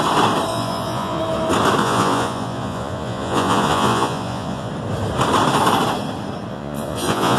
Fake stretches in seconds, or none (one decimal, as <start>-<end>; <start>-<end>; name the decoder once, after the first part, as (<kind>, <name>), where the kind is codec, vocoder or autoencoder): 0.5-1.2 (vocoder, Vocos); 1.8-4.7; 6.5-7.4